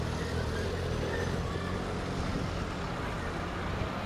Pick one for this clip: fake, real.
real